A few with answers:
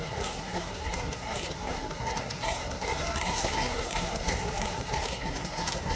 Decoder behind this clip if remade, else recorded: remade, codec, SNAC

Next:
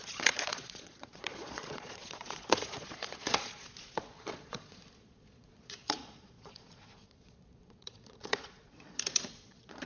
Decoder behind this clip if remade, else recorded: remade, vocoder, Vocos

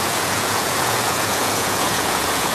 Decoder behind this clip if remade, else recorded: remade, vocoder, Vocos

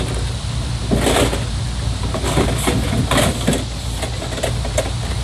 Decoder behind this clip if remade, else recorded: recorded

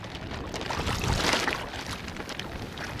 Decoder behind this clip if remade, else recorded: recorded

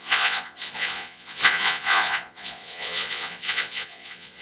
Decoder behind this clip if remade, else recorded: remade, vocoder, Vocos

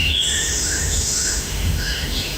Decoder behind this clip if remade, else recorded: remade, autoencoder, DAC-VAE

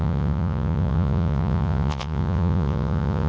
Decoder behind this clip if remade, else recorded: remade, vocoder, Vocos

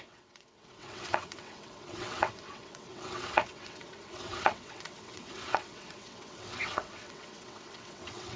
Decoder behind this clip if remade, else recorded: remade, vocoder, WaveNeXt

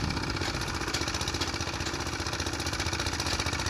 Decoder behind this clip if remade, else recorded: recorded